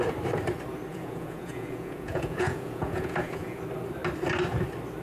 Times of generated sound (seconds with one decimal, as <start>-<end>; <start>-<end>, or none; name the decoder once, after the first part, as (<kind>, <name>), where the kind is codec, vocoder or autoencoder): 0.9-3.6 (vocoder, Vocos)